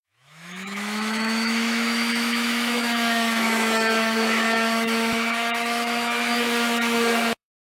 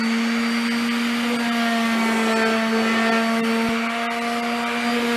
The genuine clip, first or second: second